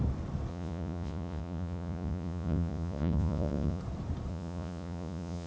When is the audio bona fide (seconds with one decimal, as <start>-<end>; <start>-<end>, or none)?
0.0-0.5; 3.8-4.3